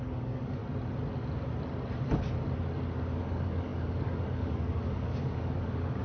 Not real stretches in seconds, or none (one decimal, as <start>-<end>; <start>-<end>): 0.0-0.6; 3.0-6.0